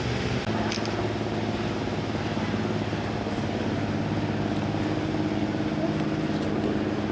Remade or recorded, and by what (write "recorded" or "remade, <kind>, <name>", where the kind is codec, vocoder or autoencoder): recorded